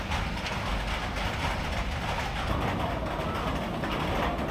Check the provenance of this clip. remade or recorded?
recorded